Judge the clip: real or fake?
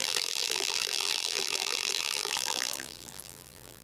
fake